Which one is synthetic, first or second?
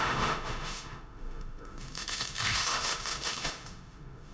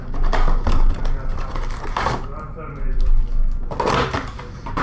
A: first